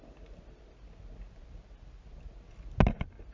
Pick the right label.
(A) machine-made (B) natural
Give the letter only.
B